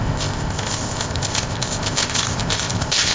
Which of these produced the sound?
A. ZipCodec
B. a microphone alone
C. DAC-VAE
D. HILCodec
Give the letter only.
A